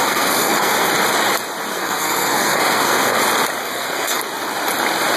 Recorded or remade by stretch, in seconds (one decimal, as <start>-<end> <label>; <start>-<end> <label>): 0.0-0.9 remade; 0.9-1.7 recorded; 1.7-3.2 remade; 3.2-3.6 recorded; 3.6-4.2 remade; 4.2-5.2 recorded